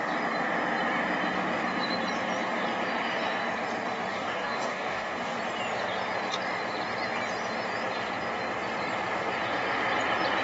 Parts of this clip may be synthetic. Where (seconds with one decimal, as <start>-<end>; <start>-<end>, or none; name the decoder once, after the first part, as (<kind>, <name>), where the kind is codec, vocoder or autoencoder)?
4.1-5.4 (codec, DAC)